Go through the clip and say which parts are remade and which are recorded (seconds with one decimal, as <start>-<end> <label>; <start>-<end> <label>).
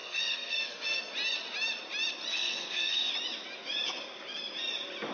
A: 0.0-1.0 remade; 1.0-2.3 recorded; 2.3-3.1 remade; 3.1-5.1 recorded